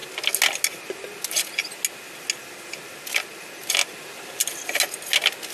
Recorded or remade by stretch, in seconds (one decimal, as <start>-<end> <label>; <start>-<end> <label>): 0.0-5.5 recorded